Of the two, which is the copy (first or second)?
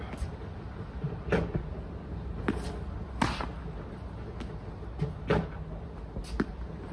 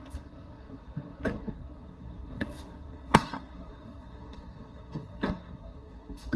second